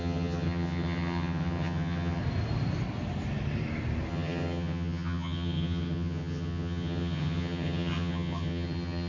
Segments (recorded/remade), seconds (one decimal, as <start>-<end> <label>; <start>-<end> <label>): 0.0-2.2 remade; 2.2-4.1 recorded; 4.1-9.1 remade